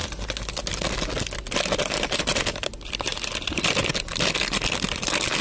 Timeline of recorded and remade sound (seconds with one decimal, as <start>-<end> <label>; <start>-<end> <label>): 0.0-2.2 recorded; 2.2-5.4 remade